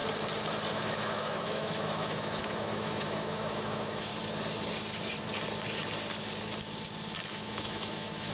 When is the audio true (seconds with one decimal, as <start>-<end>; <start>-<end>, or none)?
0.0-0.7; 4.1-7.3